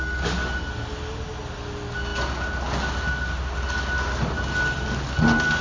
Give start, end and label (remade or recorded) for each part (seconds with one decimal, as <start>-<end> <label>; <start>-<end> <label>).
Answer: 0.0-5.6 recorded